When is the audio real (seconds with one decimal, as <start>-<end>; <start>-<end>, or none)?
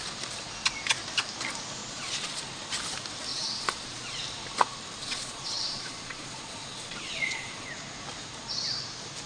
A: 0.0-1.8; 2.4-3.3; 4.2-5.0; 7.7-9.3